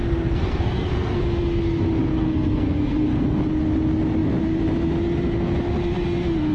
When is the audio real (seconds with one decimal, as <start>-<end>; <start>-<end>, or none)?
1.2-2.1; 3.4-6.5